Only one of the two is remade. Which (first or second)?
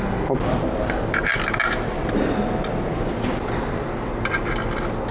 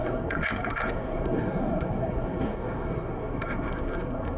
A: second